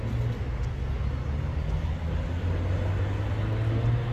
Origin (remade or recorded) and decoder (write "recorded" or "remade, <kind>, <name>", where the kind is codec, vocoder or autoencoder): recorded